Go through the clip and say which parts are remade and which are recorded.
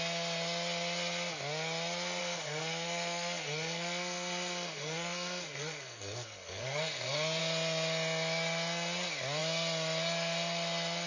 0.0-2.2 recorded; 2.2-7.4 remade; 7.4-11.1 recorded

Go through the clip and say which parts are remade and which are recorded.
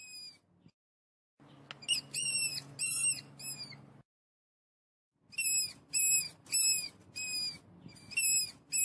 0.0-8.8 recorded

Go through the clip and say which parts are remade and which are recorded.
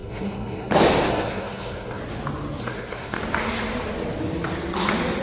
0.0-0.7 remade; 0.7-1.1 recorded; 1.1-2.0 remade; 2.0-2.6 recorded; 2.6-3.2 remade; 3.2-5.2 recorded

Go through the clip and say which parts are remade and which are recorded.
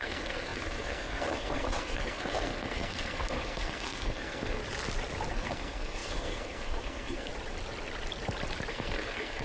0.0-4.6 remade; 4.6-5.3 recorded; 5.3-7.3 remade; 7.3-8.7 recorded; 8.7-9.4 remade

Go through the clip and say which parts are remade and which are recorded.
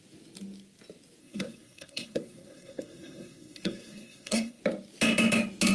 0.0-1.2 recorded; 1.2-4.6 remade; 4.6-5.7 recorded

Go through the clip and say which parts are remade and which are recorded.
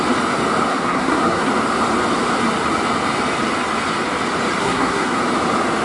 0.0-0.7 recorded; 0.7-1.5 remade; 1.5-4.6 recorded; 4.6-5.2 remade; 5.2-5.8 recorded